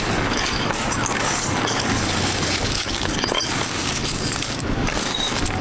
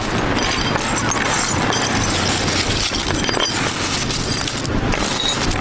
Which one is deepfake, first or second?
first